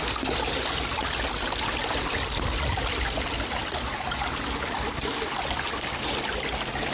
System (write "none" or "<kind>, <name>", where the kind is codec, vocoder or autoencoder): none